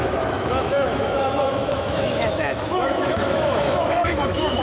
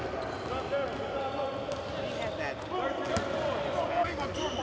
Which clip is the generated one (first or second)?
first